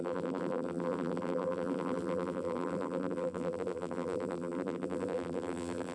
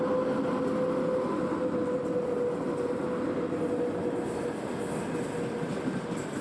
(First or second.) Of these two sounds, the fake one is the first